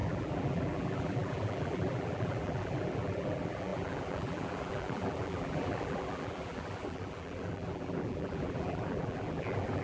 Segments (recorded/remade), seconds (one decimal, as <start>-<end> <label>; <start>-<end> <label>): 0.0-9.8 remade